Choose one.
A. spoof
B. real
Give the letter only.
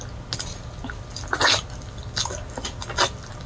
B